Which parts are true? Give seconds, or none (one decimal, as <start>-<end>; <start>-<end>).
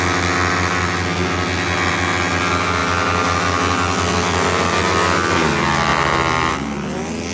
0.0-7.3